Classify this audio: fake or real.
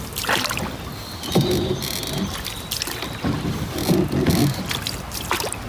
real